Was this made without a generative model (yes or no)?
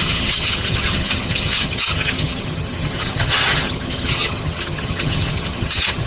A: no